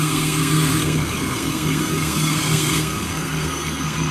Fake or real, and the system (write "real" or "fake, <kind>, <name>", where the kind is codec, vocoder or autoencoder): fake, codec, SNAC